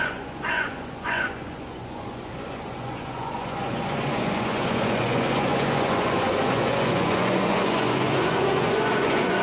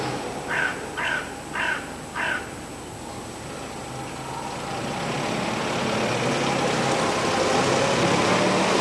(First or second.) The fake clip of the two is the first